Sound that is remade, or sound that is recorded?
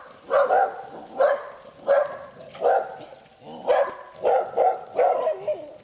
recorded